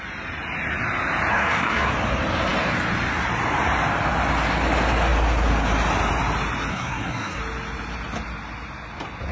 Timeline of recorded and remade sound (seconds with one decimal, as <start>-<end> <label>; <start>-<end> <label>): 0.0-1.3 recorded; 1.3-1.9 remade; 1.9-6.7 recorded; 6.7-7.4 remade; 7.4-9.3 recorded

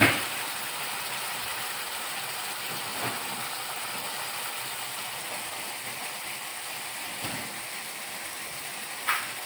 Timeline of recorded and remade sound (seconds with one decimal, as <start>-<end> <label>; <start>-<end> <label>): 0.0-1.5 remade; 1.5-2.5 recorded; 2.5-2.9 remade; 2.9-5.5 recorded; 5.5-9.5 remade

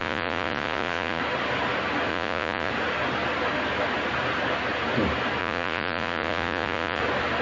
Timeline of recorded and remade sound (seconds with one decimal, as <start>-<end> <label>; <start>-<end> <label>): 0.0-1.2 remade; 1.2-2.1 recorded; 2.1-2.7 remade; 2.7-5.4 recorded; 5.4-7.0 remade; 7.0-7.4 recorded

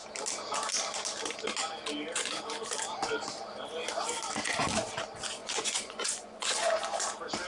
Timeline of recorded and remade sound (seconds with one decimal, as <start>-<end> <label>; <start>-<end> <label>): 0.0-5.4 recorded; 5.4-6.7 remade; 6.7-7.5 recorded

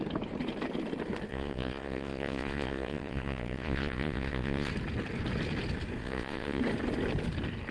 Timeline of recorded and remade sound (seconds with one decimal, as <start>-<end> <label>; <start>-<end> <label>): 0.0-1.3 recorded; 1.3-4.7 remade; 4.7-6.0 recorded; 6.0-6.6 remade; 6.6-7.7 recorded